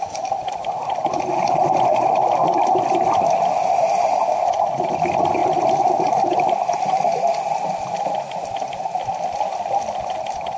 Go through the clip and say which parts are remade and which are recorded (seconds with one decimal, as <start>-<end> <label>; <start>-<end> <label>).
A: 0.0-10.6 recorded